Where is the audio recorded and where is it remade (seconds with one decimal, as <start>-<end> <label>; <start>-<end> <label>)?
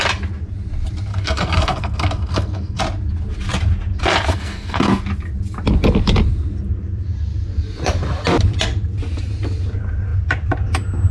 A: 0.0-1.1 recorded; 1.1-2.8 remade; 2.8-4.3 recorded; 4.3-5.0 remade; 5.0-11.1 recorded